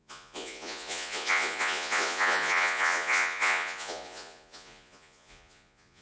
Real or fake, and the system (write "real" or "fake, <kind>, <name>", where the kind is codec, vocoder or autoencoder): fake, vocoder, Vocos